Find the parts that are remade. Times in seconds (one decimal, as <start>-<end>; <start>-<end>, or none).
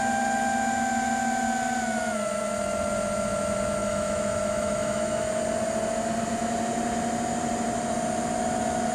3.8-5.3